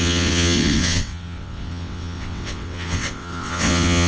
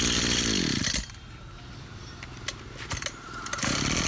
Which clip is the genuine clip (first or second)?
second